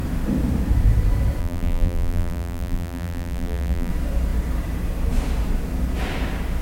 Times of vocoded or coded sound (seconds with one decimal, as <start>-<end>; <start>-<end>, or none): 1.4-3.9

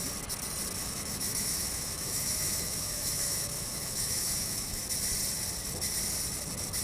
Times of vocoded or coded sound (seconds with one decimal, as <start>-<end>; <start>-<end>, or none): 0.8-4.9

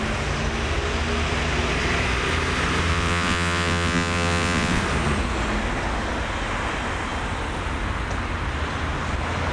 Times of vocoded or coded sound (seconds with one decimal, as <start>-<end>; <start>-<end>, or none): 2.9-4.8

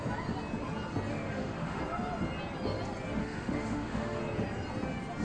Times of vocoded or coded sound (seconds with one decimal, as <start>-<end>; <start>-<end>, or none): 1.1-1.8; 3.2-4.2

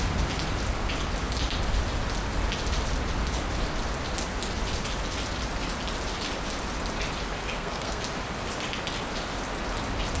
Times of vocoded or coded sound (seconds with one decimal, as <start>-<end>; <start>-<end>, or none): 7.4-8.0

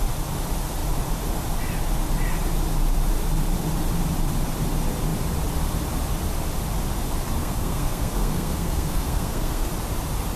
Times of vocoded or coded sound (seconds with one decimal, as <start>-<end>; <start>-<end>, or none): 7.4-9.7

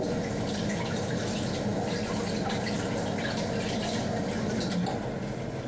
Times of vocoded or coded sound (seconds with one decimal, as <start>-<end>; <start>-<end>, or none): none